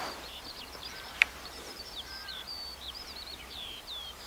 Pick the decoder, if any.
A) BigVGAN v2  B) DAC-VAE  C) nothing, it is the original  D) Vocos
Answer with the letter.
A